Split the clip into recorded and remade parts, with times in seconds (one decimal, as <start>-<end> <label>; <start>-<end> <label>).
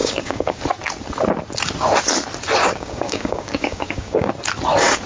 0.0-0.6 remade; 0.6-2.6 recorded; 2.6-4.3 remade; 4.3-5.1 recorded